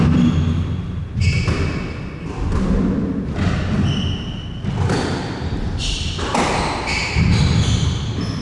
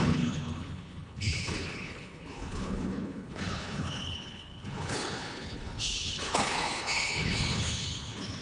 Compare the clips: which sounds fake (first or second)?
second